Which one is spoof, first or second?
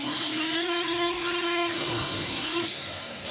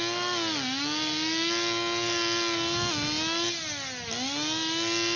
first